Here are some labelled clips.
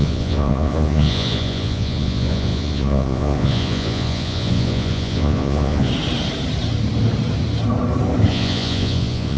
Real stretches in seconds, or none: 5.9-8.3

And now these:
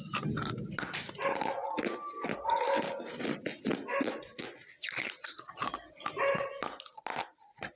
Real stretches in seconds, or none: 0.0-7.8